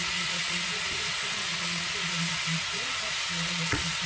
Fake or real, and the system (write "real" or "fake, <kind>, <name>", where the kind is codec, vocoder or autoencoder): fake, vocoder, Vocos